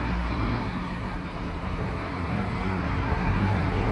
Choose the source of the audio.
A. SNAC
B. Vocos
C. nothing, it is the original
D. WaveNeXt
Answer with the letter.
A